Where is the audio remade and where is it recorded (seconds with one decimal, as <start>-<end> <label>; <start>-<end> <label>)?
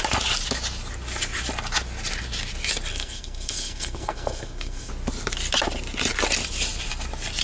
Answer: 0.0-2.9 recorded; 2.9-4.9 remade; 4.9-7.4 recorded